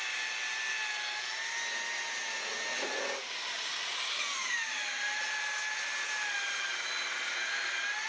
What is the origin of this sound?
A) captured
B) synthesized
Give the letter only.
A